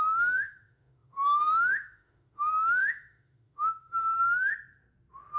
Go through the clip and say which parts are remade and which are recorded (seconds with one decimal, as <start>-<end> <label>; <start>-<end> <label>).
0.0-4.5 remade; 4.5-5.4 recorded